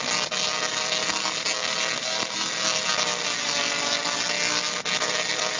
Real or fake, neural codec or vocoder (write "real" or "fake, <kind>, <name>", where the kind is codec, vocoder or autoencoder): real